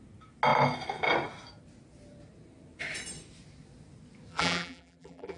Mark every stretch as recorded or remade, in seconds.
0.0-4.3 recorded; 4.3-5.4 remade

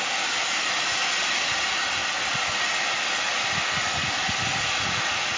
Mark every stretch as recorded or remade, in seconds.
0.0-5.4 remade